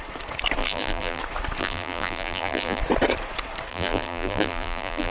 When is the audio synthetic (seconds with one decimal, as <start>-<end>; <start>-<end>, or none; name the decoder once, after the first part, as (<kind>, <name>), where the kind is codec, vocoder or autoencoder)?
0.6-1.2 (vocoder, BigVGAN v2); 1.6-2.8; 3.7-5.1